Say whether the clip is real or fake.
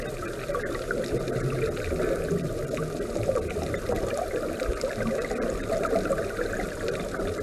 real